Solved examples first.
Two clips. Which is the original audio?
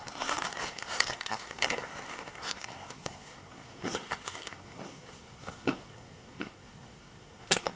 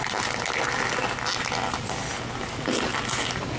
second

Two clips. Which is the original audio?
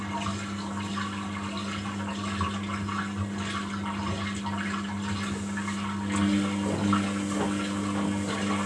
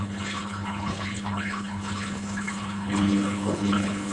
first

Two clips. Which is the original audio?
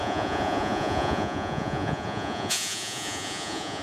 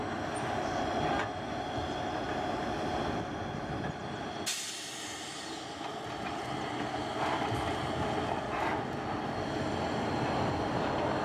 second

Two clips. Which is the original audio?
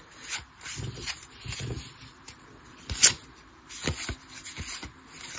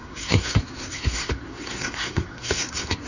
first